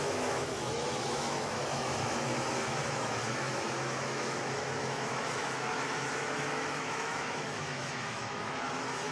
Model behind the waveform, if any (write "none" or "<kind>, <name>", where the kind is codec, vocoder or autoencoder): autoencoder, DAC-VAE